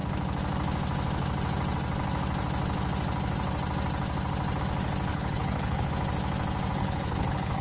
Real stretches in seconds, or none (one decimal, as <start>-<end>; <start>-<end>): 0.0-5.1; 5.9-6.8